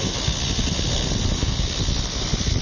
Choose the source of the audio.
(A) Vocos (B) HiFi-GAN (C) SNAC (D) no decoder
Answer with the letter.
D